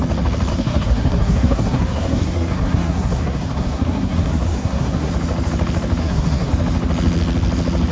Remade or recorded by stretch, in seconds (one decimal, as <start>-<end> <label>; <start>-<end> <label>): 0.0-0.5 recorded; 0.5-5.1 remade; 5.1-6.0 recorded; 6.0-6.5 remade; 6.5-7.9 recorded